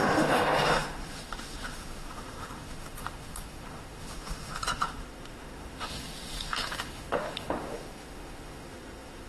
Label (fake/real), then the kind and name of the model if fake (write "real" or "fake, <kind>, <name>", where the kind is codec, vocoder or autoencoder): fake, autoencoder, DAC-VAE